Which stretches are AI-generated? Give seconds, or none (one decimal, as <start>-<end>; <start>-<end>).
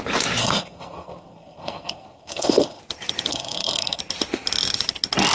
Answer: 0.4-2.8; 3.3-4.0